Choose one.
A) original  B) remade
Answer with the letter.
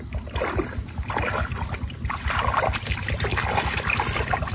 A